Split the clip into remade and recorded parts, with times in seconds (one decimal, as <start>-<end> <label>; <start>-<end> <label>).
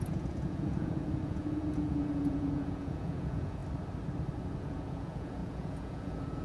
0.0-3.6 remade; 3.6-4.6 recorded; 4.6-6.4 remade